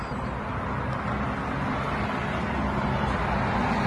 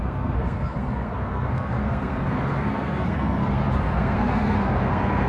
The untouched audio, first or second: first